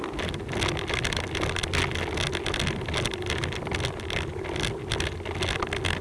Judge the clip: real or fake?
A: real